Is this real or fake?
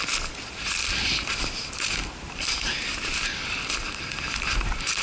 fake